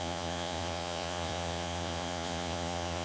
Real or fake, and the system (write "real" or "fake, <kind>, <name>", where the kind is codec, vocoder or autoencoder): fake, vocoder, Vocos